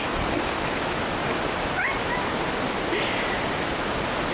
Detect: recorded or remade recorded